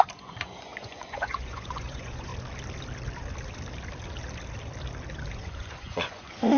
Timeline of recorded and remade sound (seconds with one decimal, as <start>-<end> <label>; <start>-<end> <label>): 0.0-2.3 remade; 2.3-5.3 recorded; 5.3-6.6 remade